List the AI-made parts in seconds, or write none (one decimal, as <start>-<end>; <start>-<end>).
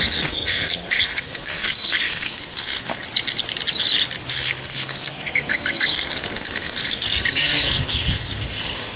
0.0-3.0; 4.3-9.0